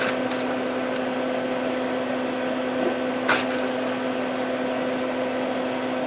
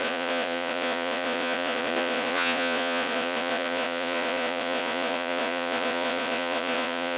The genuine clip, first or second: first